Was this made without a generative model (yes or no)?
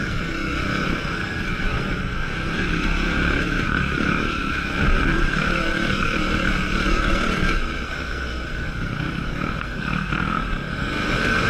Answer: no